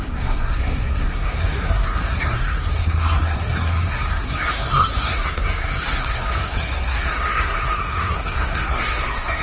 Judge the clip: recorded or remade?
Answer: remade